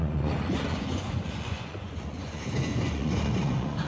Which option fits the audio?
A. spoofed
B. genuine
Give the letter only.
A